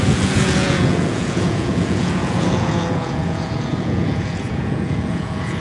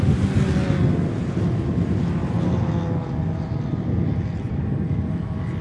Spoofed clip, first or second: first